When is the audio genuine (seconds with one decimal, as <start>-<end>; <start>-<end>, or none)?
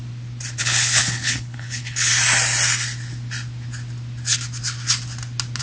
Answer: 0.0-0.6; 2.1-5.6